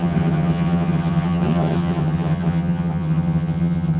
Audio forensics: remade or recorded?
remade